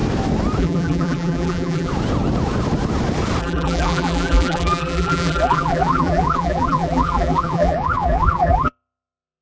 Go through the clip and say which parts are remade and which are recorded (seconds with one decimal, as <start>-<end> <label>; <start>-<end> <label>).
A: 0.0-0.6 recorded; 0.6-1.9 remade; 1.9-3.4 recorded; 3.4-9.4 remade